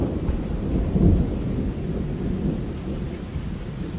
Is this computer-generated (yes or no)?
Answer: no